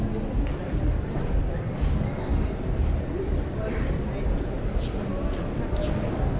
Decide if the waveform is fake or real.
real